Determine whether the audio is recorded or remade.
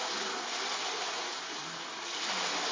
recorded